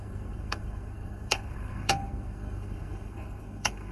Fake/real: fake